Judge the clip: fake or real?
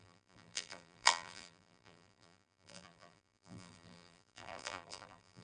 fake